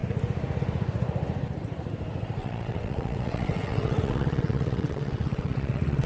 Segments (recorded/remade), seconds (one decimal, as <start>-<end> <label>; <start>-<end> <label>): 0.0-2.4 recorded; 2.4-6.1 remade